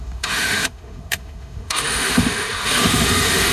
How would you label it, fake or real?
fake